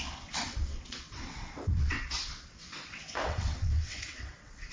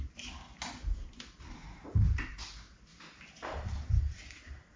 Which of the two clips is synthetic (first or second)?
first